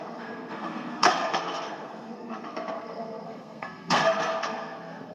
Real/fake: fake